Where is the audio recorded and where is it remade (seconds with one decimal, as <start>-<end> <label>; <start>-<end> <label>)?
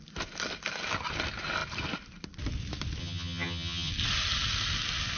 0.0-3.0 recorded; 3.0-3.9 remade; 3.9-5.2 recorded